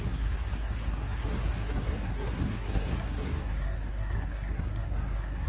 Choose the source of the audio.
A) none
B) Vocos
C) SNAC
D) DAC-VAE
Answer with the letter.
C